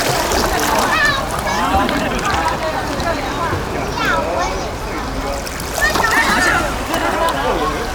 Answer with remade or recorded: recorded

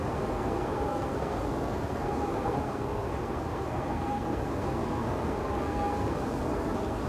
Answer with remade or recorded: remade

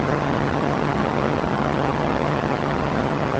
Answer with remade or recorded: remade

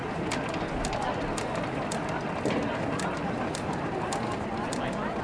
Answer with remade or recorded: recorded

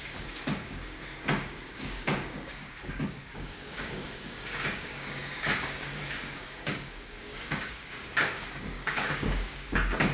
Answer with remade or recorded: remade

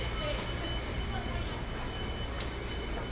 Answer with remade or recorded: recorded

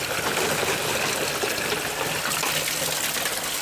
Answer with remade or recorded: recorded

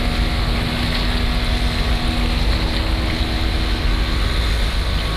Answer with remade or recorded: recorded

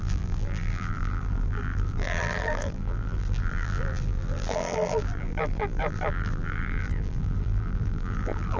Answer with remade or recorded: remade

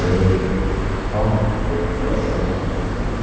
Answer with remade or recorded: recorded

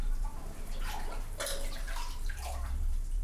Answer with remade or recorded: remade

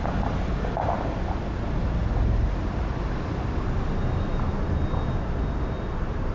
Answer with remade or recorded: recorded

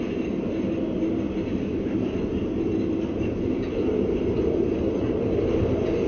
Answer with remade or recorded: recorded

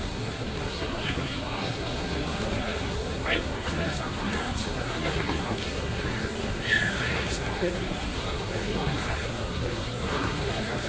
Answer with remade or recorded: remade